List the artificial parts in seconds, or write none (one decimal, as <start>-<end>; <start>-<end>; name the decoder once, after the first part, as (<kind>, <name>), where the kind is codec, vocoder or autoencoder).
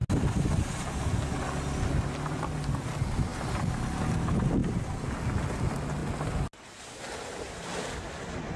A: none